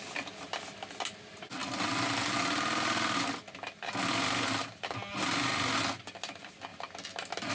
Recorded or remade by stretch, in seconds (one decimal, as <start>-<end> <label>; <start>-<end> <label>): 0.0-7.5 recorded